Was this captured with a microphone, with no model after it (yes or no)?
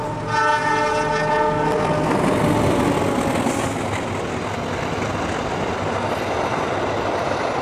yes